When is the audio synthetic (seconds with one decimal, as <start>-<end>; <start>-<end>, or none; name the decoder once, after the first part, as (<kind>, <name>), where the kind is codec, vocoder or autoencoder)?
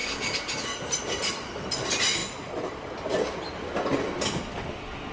none